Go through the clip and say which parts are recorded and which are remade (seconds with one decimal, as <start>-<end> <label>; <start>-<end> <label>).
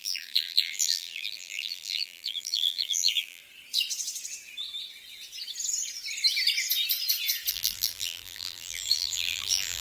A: 0.0-3.4 remade; 3.4-7.5 recorded; 7.5-9.8 remade